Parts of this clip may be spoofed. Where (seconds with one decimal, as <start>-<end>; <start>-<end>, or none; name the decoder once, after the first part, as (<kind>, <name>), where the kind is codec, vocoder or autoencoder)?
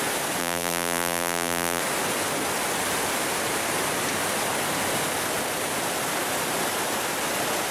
0.4-1.8 (vocoder, BigVGAN v2)